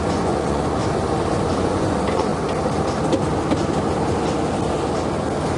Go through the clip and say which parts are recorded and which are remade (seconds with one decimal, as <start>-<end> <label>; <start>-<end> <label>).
0.0-0.8 remade; 0.8-1.6 recorded; 1.6-2.3 remade; 2.3-5.6 recorded

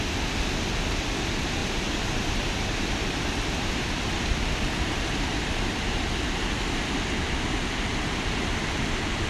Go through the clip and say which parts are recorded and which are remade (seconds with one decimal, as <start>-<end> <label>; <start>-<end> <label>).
0.0-1.6 recorded; 1.6-3.9 remade; 3.9-5.3 recorded; 5.3-6.0 remade; 6.0-9.3 recorded